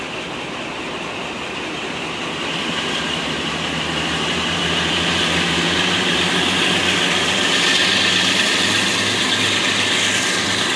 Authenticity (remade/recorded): remade